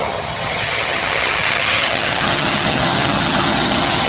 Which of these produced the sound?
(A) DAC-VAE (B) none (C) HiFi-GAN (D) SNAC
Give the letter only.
C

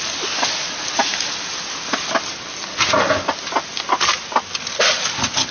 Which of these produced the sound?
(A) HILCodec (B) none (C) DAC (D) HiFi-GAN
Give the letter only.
B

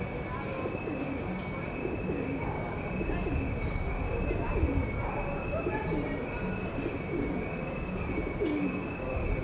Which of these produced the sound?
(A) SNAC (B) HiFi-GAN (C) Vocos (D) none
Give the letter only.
D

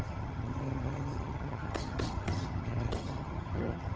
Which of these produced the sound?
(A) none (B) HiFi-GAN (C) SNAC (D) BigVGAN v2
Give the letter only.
B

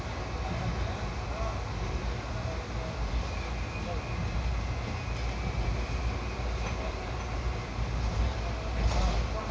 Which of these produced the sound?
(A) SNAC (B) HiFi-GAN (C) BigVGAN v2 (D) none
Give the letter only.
D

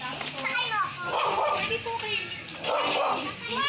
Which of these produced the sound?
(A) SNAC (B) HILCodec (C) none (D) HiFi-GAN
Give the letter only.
C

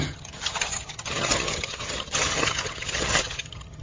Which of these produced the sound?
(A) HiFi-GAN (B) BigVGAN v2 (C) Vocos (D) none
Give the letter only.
A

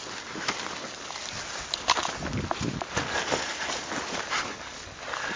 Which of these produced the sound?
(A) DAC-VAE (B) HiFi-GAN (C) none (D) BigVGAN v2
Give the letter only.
C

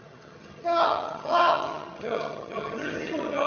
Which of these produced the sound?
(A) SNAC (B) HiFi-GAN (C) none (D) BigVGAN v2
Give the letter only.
B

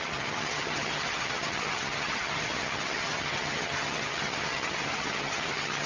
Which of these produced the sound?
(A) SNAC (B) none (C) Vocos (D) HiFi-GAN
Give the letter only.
D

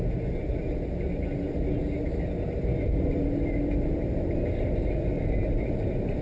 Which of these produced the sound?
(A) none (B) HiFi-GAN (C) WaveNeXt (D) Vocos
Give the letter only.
A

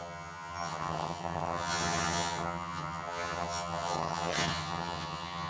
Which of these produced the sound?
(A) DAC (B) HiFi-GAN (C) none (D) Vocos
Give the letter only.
B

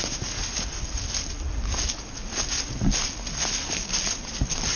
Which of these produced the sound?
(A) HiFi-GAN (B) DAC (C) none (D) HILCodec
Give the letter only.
C